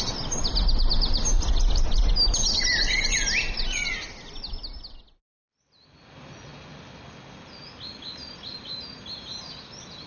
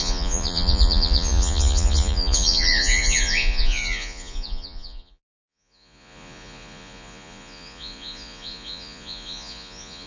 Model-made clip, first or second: second